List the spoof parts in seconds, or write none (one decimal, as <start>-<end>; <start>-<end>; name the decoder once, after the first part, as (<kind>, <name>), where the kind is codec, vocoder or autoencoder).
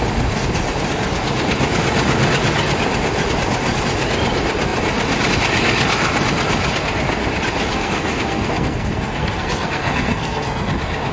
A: 7.7-10.7 (codec, SNAC)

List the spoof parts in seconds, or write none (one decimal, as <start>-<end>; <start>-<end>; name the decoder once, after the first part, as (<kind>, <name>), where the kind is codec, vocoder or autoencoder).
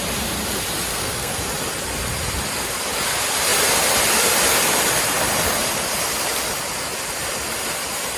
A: 0.9-1.4 (codec, SNAC)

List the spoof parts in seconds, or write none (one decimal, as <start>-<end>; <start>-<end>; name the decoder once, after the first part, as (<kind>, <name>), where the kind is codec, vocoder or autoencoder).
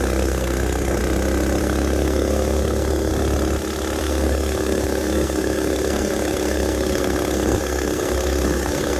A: 0.0-1.0 (codec, SNAC); 1.6-3.1; 4.0-9.0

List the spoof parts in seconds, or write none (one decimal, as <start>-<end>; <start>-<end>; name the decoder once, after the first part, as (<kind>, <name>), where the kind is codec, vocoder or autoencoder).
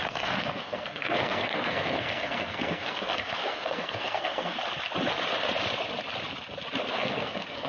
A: 0.0-4.6 (codec, SNAC); 6.9-7.7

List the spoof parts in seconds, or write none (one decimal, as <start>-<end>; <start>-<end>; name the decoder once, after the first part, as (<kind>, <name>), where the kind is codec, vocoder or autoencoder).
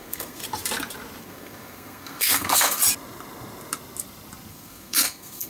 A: 0.0-0.4 (codec, SNAC); 1.2-2.8; 4.5-5.5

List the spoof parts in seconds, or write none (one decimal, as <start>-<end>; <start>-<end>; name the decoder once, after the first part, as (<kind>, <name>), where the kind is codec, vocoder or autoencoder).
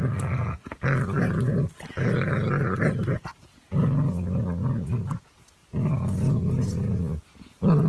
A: none